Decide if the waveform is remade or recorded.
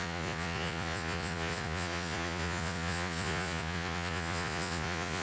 remade